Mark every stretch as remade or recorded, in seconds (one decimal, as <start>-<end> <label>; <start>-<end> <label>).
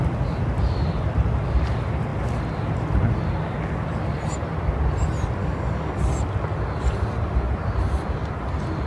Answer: 0.0-5.4 recorded; 5.4-6.0 remade; 6.0-8.9 recorded